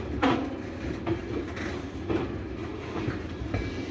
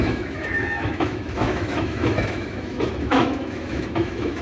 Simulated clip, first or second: second